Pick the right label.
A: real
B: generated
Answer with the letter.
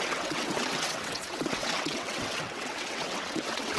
B